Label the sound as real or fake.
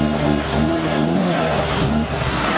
fake